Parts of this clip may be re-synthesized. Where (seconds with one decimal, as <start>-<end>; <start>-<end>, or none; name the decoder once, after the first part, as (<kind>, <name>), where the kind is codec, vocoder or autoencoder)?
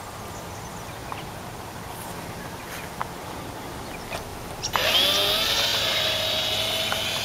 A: 5.7-6.4 (vocoder, BigVGAN v2)